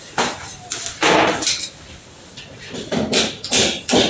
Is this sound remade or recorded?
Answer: recorded